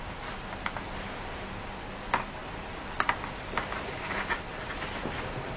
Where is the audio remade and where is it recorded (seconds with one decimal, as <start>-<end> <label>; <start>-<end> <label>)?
0.0-5.6 recorded